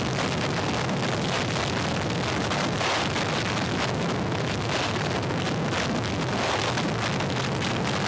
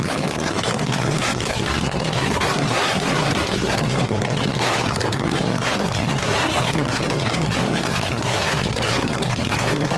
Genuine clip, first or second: first